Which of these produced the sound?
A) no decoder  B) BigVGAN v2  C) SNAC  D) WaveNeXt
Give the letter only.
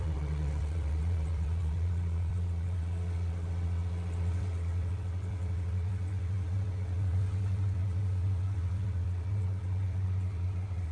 D